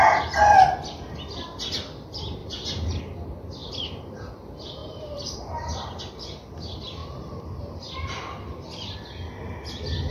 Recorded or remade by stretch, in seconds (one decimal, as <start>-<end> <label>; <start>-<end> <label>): 0.0-2.4 recorded; 2.4-3.0 remade; 3.0-3.6 recorded; 3.6-4.3 remade; 4.3-4.8 recorded; 4.8-6.0 remade; 6.0-7.0 recorded; 7.0-7.8 remade; 7.8-10.1 recorded